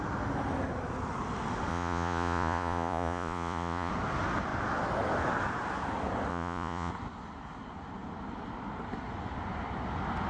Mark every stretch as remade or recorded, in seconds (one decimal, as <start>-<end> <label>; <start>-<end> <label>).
0.0-1.7 recorded; 1.7-3.9 remade; 3.9-6.3 recorded; 6.3-6.9 remade; 6.9-10.3 recorded

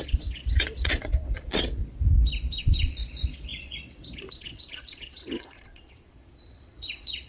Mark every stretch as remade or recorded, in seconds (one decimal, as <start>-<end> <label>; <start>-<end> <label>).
0.0-1.8 remade; 1.8-2.6 recorded; 2.6-7.3 remade

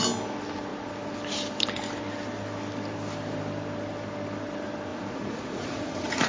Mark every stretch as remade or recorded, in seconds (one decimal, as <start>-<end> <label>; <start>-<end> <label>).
0.0-4.9 recorded; 4.9-6.3 remade

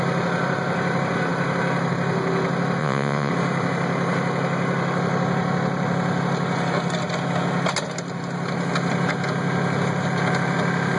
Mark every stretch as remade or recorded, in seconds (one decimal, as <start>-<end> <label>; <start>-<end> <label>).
0.0-2.8 recorded; 2.8-3.3 remade; 3.3-11.0 recorded

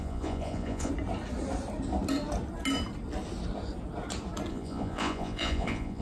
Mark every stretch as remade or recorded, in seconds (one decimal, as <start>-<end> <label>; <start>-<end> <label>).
0.0-0.9 remade; 0.9-4.5 recorded; 4.5-6.0 remade

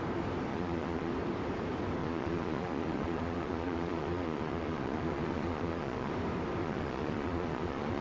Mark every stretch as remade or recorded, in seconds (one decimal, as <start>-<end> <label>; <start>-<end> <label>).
0.0-0.5 recorded; 0.5-1.1 remade; 1.1-2.0 recorded; 2.0-6.1 remade; 6.1-6.6 recorded; 6.6-8.0 remade

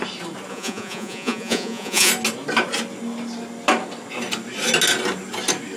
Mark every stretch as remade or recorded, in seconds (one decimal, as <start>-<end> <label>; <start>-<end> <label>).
0.0-0.5 recorded; 0.5-2.1 remade; 2.1-5.8 recorded